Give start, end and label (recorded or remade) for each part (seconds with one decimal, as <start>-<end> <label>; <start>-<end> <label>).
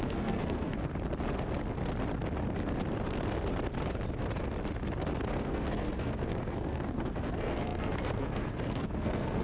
0.0-0.9 remade; 0.9-5.4 recorded; 5.4-9.4 remade